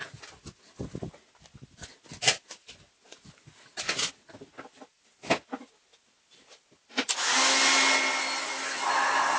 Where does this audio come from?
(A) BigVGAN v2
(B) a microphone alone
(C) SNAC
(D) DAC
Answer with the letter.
B